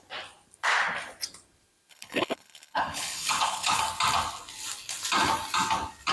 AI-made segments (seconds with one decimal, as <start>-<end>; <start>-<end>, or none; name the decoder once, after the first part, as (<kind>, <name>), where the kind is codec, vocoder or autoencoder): 1.9-3.8 (codec, HILCodec)